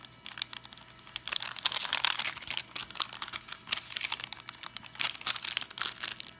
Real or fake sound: real